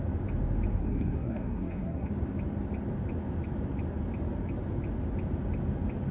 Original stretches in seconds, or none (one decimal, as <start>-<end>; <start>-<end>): 0.0-0.7; 2.1-6.1